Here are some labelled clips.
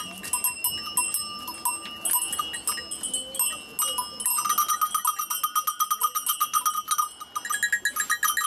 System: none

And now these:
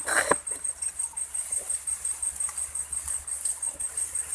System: none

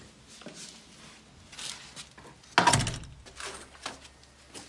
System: none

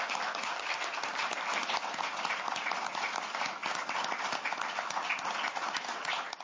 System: none